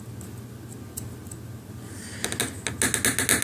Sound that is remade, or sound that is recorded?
recorded